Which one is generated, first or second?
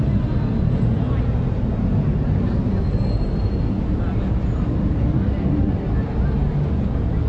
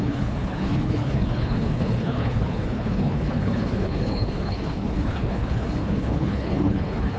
second